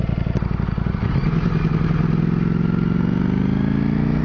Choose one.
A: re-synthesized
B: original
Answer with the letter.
B